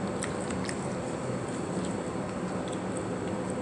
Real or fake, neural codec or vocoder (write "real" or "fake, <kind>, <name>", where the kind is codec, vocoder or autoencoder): real